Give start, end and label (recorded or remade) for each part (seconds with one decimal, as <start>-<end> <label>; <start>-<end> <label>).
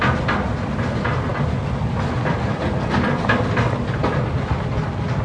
0.0-5.2 recorded